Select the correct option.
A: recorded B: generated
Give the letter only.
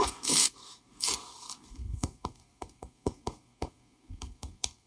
B